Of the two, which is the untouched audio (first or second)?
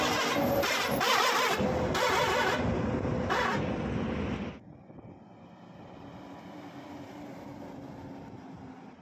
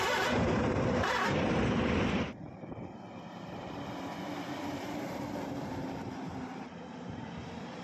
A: first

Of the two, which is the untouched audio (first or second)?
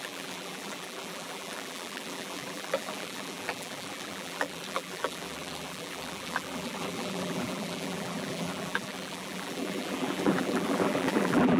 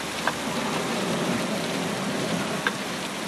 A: second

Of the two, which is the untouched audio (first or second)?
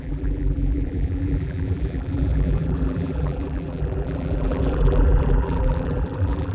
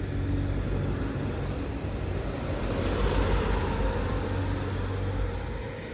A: second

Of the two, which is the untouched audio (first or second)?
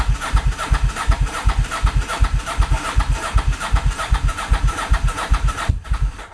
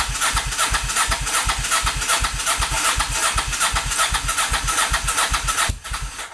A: second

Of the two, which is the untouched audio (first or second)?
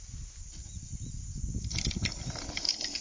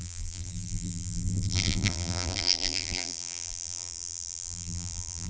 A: first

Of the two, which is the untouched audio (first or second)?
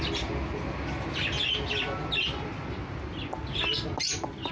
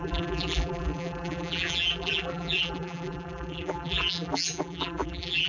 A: first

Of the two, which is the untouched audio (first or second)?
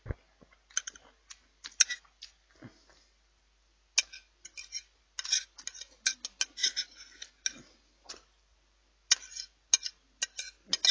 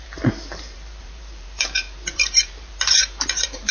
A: first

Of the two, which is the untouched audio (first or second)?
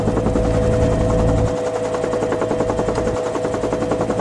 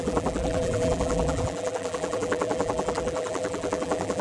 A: first